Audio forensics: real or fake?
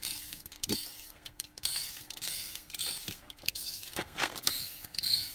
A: fake